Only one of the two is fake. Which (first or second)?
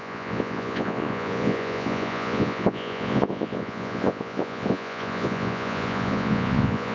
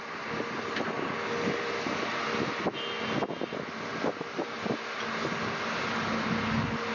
first